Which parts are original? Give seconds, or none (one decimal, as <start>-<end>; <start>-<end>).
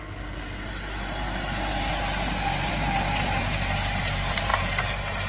0.0-5.3